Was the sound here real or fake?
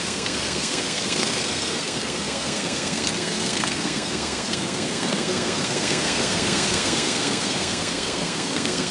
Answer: fake